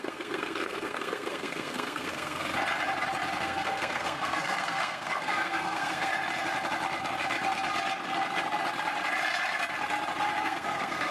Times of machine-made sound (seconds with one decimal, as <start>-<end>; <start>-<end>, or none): 0.0-2.4; 3.4-6.1; 10.4-11.1